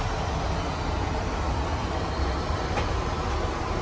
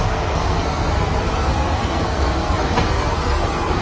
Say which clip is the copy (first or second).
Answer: second